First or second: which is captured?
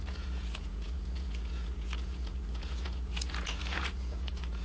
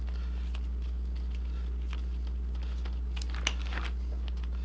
second